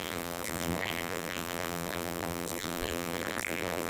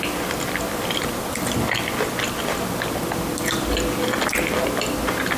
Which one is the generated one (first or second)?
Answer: first